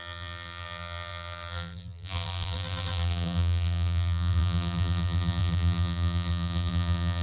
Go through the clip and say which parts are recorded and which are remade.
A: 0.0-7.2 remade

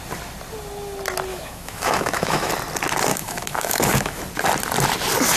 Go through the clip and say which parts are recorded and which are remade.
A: 0.0-1.3 recorded; 1.3-2.5 remade; 2.5-3.1 recorded; 3.1-4.2 remade; 4.2-5.4 recorded

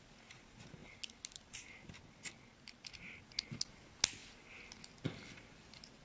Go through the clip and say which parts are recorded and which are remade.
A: 0.0-6.0 recorded

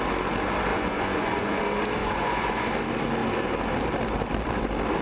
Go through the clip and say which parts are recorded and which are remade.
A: 0.0-0.7 recorded; 0.7-1.6 remade; 1.6-2.0 recorded; 2.0-2.7 remade; 2.7-5.0 recorded

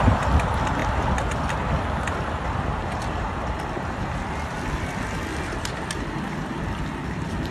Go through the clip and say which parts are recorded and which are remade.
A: 0.0-7.5 recorded

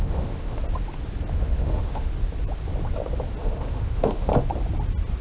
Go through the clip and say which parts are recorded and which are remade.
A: 0.0-0.6 remade; 0.6-1.3 recorded; 1.3-2.1 remade; 2.1-3.4 recorded; 3.4-4.3 remade; 4.3-5.2 recorded

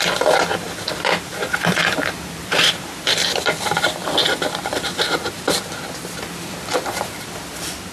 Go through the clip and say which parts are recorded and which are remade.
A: 0.0-4.0 remade; 4.0-6.5 recorded; 6.5-7.9 remade